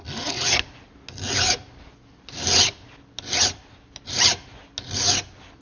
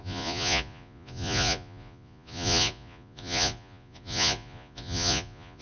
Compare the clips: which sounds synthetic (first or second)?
second